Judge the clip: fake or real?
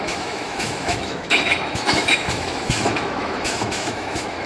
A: fake